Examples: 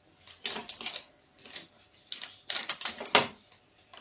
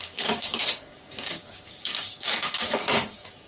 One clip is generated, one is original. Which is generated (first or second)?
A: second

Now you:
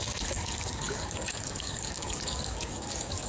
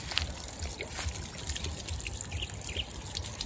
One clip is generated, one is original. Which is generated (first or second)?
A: first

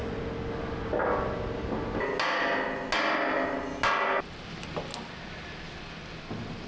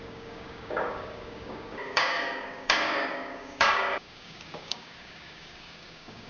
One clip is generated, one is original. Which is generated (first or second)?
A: second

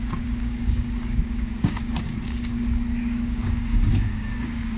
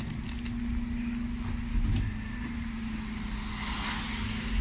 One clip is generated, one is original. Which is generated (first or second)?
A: first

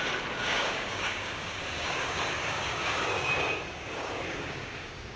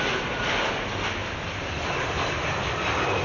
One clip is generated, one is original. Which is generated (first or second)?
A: first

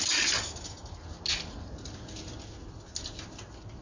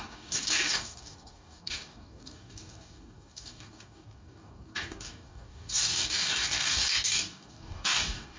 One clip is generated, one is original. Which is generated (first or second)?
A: second